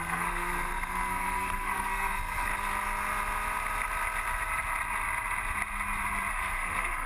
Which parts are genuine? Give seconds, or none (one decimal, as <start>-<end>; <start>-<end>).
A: 2.5-6.3